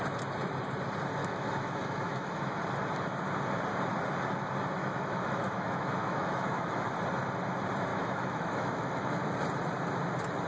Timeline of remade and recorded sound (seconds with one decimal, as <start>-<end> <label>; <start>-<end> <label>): 0.0-1.2 recorded; 1.2-2.6 remade; 2.6-4.8 recorded; 4.8-6.9 remade; 6.9-7.9 recorded; 7.9-9.3 remade; 9.3-10.5 recorded